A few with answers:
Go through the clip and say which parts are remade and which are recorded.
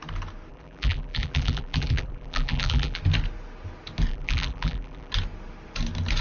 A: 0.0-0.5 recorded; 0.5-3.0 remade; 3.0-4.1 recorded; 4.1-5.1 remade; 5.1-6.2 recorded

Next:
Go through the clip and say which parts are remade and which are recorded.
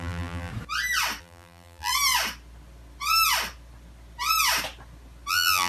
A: 0.0-0.5 remade; 0.5-1.2 recorded; 1.2-1.9 remade; 1.9-5.3 recorded; 5.3-5.7 remade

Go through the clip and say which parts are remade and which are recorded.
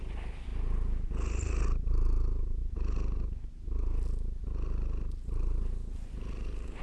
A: 0.0-6.8 recorded